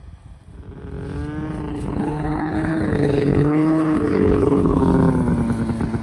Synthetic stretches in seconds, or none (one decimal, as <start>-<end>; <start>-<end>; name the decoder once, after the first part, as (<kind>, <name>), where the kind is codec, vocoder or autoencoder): 1.7-4.8 (codec, HILCodec)